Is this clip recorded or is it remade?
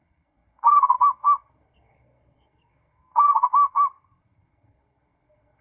remade